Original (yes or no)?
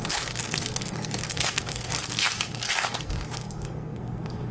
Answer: no